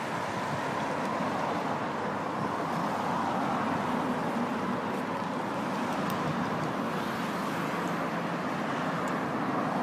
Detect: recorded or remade recorded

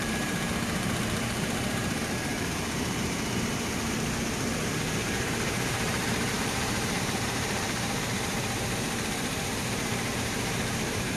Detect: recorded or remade remade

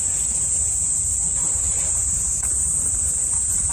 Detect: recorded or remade remade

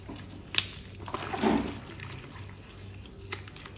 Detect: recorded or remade recorded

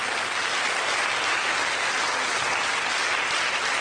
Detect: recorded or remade recorded